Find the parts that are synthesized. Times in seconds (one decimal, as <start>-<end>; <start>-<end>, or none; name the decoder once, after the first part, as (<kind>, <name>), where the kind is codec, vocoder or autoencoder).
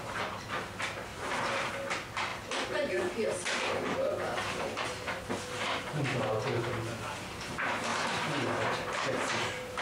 1.1-1.7 (vocoder, BigVGAN v2); 7.9-9.8